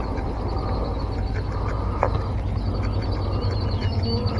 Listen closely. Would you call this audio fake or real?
real